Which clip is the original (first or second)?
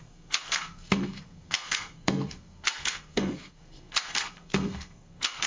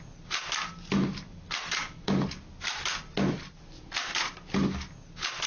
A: second